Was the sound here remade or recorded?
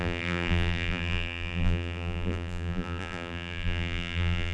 remade